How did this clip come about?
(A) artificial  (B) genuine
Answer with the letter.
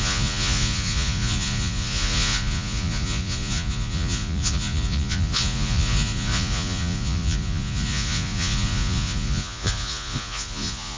A